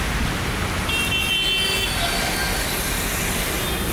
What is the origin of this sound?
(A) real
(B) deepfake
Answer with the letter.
A